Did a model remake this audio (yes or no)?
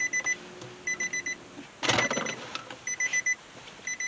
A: no